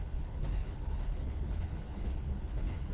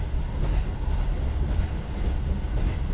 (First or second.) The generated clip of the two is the first